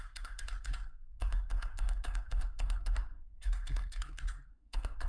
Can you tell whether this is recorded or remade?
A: remade